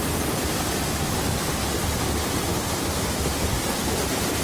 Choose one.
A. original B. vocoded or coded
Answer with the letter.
A